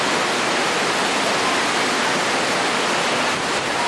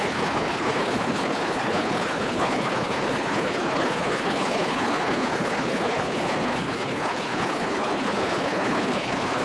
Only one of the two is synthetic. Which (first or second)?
second